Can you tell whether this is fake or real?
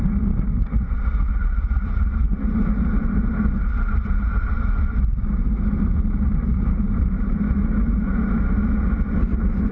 real